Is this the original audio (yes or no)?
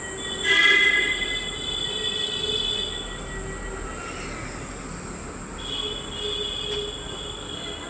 yes